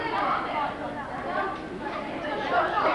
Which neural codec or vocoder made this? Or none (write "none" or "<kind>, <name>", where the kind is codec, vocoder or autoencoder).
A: none